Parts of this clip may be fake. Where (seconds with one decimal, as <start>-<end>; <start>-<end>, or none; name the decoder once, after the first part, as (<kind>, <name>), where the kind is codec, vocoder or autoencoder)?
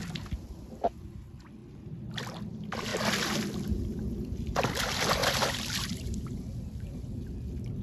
1.6-2.4 (vocoder, BigVGAN v2); 5.2-6.3